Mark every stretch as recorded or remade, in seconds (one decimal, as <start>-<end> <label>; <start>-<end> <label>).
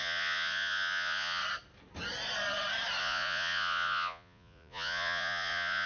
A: 0.0-1.4 remade; 1.4-3.0 recorded; 3.0-5.9 remade